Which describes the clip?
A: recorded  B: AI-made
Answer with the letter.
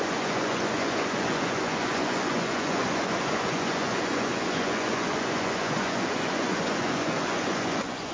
B